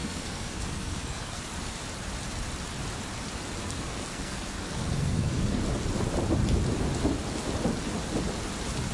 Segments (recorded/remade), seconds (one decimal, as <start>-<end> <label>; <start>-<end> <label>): 0.0-1.4 remade; 1.4-3.6 recorded; 3.6-5.6 remade; 5.6-8.9 recorded

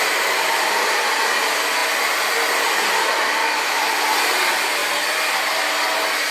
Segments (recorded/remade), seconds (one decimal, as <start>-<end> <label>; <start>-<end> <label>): 0.0-3.4 recorded; 3.4-3.9 remade; 3.9-6.3 recorded

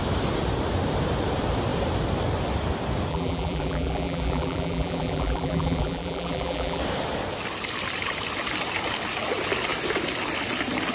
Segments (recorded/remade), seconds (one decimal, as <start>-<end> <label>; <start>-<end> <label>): 0.0-3.1 recorded; 3.1-6.8 remade; 6.8-10.9 recorded

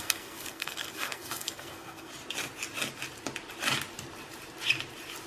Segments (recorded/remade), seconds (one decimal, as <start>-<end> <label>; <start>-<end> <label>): 0.0-2.1 remade; 2.1-5.3 recorded

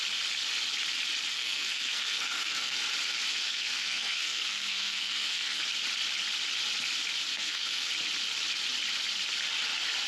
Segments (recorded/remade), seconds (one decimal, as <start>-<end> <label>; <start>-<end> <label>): 0.0-1.3 recorded; 1.3-2.8 remade; 2.8-3.3 recorded; 3.3-5.6 remade; 5.6-7.3 recorded; 7.3-7.9 remade; 7.9-10.1 recorded

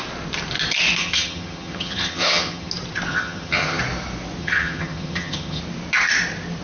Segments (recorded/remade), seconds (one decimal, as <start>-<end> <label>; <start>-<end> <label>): 0.0-1.0 recorded; 1.0-2.7 remade; 2.7-3.1 recorded; 3.1-3.8 remade; 3.8-4.4 recorded; 4.4-5.6 remade; 5.6-6.6 recorded